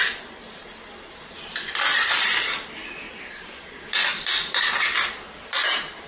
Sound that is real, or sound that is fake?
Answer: real